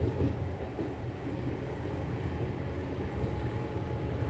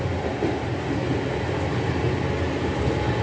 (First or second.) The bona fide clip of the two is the second